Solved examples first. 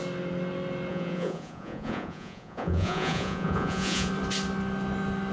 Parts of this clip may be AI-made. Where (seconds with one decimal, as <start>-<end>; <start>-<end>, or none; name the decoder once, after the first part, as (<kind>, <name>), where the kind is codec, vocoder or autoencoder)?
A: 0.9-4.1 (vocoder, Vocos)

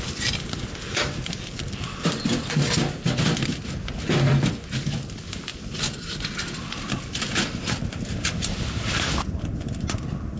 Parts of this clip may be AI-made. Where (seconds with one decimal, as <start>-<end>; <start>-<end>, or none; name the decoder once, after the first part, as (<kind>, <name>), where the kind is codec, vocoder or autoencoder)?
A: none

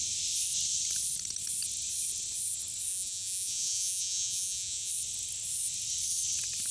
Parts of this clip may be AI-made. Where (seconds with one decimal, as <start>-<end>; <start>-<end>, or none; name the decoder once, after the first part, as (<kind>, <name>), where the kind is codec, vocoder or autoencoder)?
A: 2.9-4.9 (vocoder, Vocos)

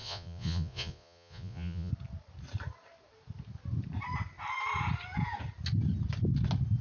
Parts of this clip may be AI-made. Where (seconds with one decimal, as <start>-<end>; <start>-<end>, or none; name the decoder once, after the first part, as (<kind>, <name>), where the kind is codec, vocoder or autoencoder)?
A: 0.0-1.9 (vocoder, Vocos)

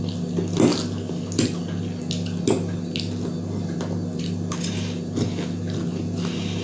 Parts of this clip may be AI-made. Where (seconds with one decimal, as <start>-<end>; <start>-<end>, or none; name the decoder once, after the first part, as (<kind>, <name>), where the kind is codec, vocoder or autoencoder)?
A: none

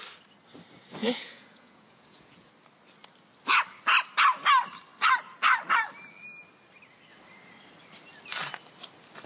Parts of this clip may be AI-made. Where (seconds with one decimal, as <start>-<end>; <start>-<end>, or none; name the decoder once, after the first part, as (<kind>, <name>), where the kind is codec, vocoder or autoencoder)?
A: 1.0-2.5 (vocoder, Vocos)

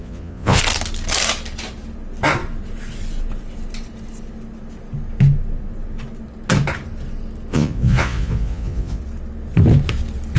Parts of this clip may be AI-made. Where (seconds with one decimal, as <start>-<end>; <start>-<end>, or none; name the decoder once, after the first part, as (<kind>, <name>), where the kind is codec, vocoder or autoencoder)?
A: 0.0-0.6 (vocoder, Vocos); 7.5-9.0